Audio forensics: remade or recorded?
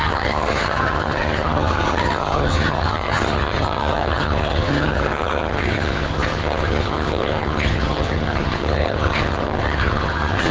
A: remade